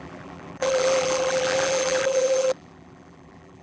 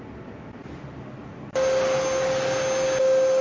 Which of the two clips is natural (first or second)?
second